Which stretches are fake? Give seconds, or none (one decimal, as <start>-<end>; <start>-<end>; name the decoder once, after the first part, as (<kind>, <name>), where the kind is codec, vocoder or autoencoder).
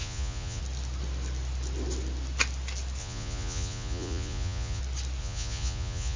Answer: 0.0-0.6 (vocoder, Vocos); 3.0-4.8; 5.2-6.2